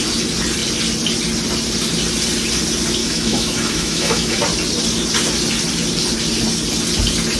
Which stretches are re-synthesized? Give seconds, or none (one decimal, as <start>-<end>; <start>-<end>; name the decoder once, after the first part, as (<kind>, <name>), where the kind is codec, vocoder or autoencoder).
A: 3.0-4.4 (autoencoder, DAC-VAE)